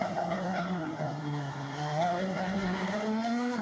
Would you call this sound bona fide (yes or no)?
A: no